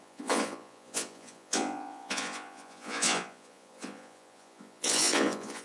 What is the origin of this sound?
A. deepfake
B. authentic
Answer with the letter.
A